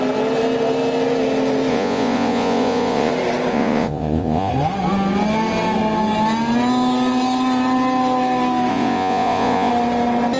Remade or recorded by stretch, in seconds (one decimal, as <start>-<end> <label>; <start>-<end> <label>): 0.0-1.7 recorded; 1.7-3.1 remade; 3.1-3.5 recorded; 3.5-4.5 remade; 4.5-8.7 recorded; 8.7-9.7 remade; 9.7-10.4 recorded